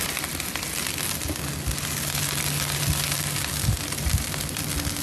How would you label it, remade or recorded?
recorded